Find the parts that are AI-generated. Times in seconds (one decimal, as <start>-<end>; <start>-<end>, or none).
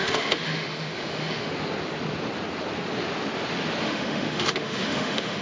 0.0-1.5; 3.8-5.4